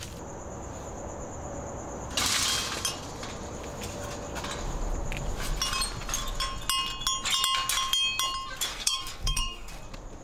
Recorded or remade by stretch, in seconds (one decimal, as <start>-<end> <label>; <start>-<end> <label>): 0.0-8.7 recorded; 8.7-9.7 remade; 9.7-10.2 recorded